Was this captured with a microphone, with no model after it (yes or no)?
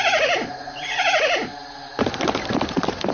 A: yes